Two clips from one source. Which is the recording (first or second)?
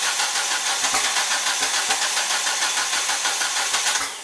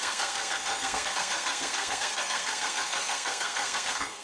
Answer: first